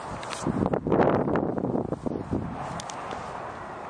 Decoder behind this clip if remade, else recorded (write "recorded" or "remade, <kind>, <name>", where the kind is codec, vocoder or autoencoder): recorded